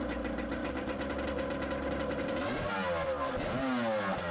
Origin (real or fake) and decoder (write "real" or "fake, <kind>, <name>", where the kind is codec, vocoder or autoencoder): real